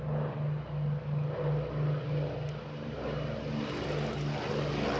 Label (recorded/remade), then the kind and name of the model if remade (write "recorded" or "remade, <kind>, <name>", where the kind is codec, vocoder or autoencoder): recorded